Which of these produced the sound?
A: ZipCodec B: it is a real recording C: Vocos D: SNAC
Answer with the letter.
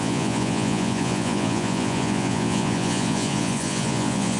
C